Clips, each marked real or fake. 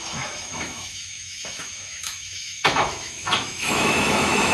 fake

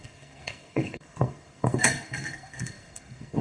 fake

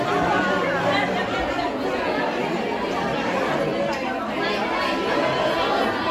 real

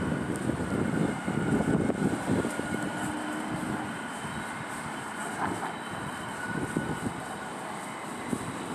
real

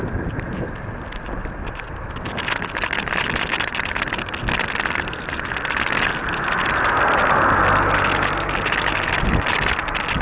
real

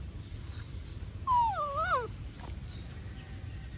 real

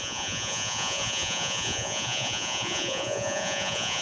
fake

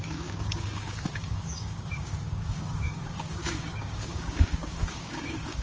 fake